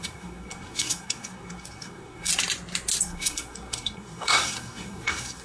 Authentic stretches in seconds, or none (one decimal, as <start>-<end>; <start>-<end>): 2.3-3.0